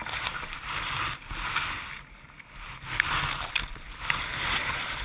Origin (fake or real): real